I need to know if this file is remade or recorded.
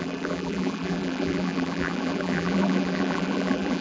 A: remade